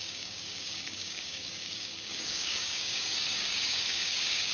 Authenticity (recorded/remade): remade